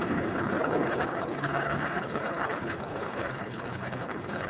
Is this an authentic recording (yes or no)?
no